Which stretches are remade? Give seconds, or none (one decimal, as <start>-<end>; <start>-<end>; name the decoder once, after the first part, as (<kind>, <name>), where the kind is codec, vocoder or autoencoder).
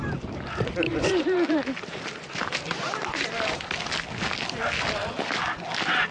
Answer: 0.9-3.8 (vocoder, BigVGAN v2)